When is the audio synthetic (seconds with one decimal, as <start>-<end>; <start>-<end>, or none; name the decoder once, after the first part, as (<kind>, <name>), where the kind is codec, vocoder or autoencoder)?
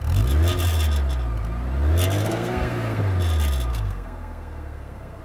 2.2-3.0 (codec, SNAC); 3.7-5.2